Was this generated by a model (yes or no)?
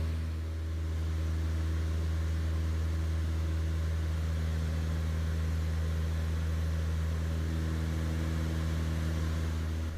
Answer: no